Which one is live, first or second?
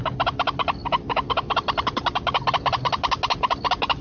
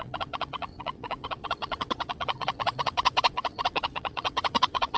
first